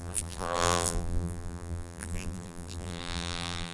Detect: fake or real fake